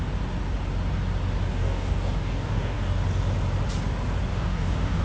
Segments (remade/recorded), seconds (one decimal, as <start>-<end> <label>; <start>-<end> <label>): 0.0-1.6 recorded; 1.6-3.0 remade; 3.0-4.3 recorded; 4.3-5.0 remade